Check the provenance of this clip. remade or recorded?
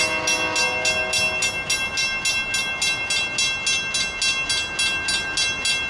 recorded